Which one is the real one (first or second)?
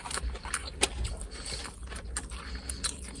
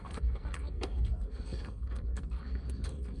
first